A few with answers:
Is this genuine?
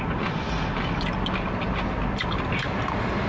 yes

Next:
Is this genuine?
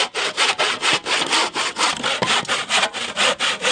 yes